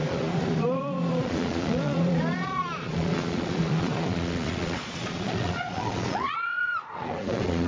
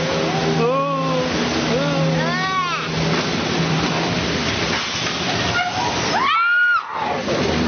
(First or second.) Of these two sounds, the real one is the second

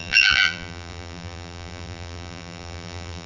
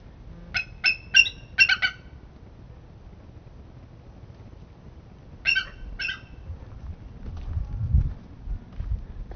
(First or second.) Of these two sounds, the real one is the second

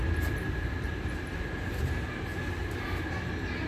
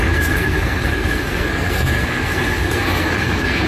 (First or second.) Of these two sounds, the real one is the first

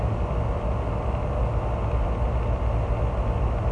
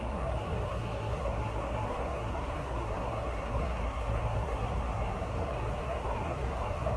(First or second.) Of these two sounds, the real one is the first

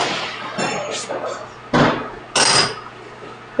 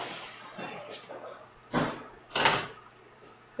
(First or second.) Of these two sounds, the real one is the first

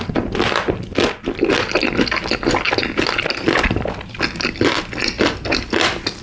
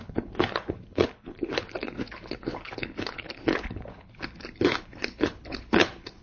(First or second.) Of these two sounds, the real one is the first